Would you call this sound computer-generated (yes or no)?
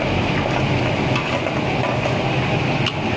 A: no